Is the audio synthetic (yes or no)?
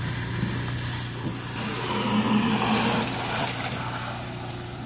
no